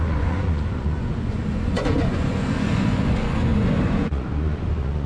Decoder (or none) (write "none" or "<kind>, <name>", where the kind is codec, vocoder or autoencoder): vocoder, Vocos